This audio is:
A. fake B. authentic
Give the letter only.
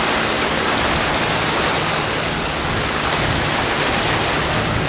B